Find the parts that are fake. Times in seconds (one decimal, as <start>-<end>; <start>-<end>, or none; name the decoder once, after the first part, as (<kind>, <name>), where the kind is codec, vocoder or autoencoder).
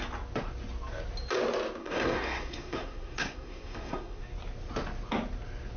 1.8-4.2 (codec, SNAC)